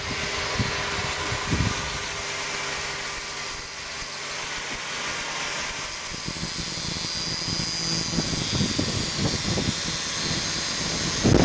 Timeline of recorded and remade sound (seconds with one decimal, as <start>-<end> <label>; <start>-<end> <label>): 0.0-11.4 recorded

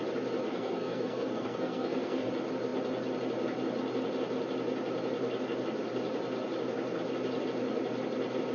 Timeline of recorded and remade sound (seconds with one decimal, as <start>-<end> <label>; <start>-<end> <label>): 0.0-0.5 recorded; 0.5-2.3 remade; 2.3-8.5 recorded

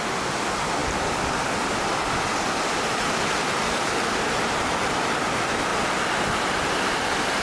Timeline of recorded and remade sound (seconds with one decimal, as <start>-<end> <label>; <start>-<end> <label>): 0.0-7.4 recorded

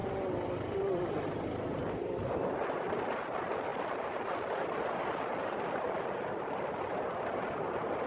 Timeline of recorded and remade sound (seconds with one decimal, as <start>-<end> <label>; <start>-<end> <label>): 0.0-2.5 recorded; 2.5-8.1 remade

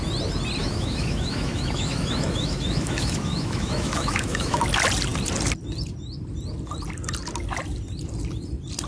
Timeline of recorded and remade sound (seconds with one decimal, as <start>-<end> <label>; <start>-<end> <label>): 0.0-0.6 recorded; 0.6-4.6 remade; 4.6-8.9 recorded